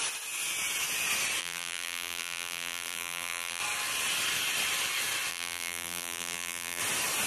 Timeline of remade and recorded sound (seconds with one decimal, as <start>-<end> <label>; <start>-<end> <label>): 0.0-1.4 recorded; 1.4-3.6 remade; 3.6-5.3 recorded; 5.3-6.8 remade; 6.8-7.3 recorded